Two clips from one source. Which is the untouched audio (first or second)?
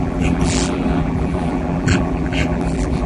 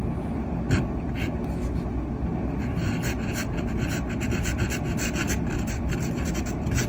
second